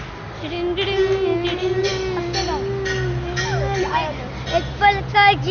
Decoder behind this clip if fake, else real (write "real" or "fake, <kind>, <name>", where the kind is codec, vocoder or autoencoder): real